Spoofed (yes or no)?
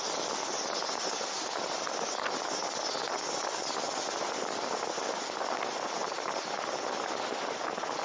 no